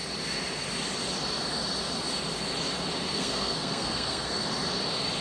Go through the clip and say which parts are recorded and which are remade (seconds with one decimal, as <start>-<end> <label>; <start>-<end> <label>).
0.0-3.1 recorded; 3.1-4.4 remade; 4.4-5.2 recorded